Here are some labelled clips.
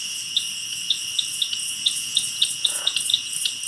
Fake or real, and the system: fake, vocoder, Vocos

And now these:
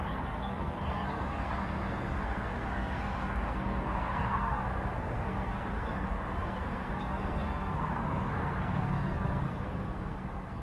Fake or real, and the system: fake, codec, SNAC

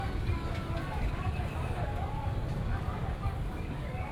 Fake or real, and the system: fake, codec, DAC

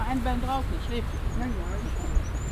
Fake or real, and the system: real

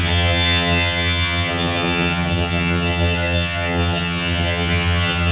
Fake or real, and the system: fake, vocoder, HiFi-GAN